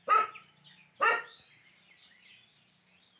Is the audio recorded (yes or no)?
yes